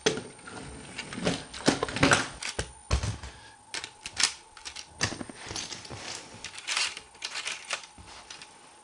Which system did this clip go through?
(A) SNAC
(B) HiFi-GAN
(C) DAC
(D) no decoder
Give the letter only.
D